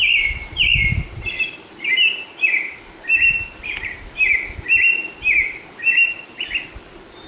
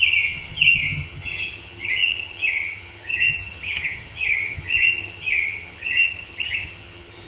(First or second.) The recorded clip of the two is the first